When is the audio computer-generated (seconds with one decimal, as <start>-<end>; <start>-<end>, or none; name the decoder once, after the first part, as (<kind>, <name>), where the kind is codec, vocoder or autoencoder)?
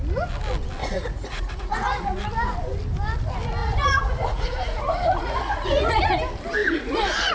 0.8-2.2 (vocoder, Vocos); 3.6-6.1; 6.6-7.3